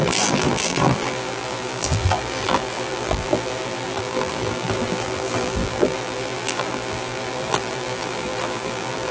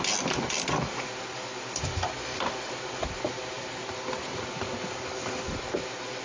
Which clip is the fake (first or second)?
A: first